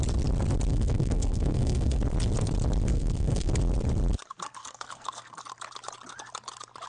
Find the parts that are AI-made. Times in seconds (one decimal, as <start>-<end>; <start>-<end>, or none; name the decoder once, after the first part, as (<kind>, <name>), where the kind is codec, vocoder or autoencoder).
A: 0.7-2.0 (codec, SNAC); 2.9-3.5; 4.6-5.4